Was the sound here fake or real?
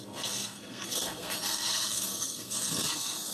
fake